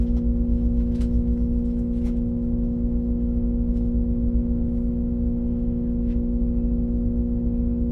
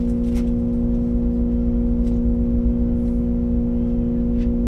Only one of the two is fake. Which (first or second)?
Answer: first